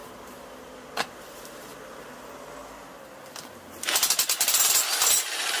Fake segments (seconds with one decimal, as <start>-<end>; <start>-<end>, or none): 1.2-1.7; 5.1-5.6